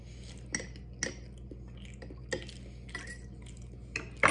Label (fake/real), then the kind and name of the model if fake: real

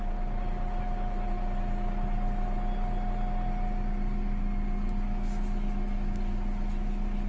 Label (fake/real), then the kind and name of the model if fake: real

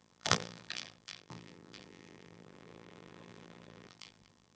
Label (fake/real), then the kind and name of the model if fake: fake, vocoder, BigVGAN v2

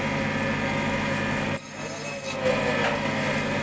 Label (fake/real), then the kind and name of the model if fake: real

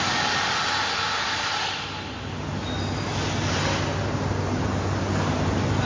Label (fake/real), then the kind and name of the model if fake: real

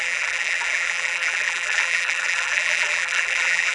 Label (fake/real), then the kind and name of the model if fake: fake, vocoder, BigVGAN v2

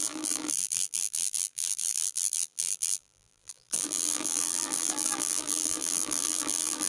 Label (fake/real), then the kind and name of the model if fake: fake, vocoder, BigVGAN v2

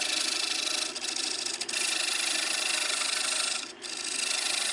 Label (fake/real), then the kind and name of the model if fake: real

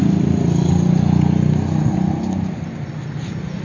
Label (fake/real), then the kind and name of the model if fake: real